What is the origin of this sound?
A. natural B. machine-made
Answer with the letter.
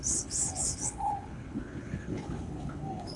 B